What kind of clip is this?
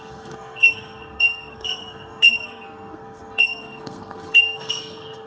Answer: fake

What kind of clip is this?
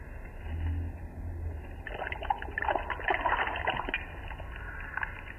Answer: real